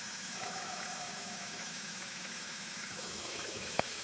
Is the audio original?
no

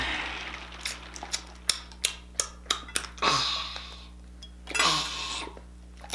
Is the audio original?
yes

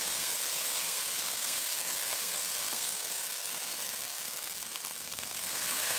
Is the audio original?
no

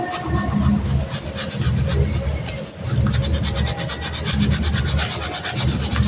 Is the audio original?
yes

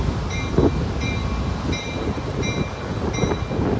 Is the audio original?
yes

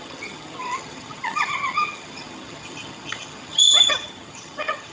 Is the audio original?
no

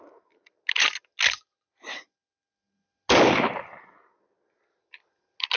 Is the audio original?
yes